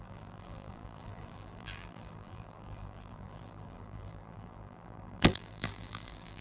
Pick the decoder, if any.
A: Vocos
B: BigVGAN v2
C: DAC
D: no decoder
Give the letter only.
B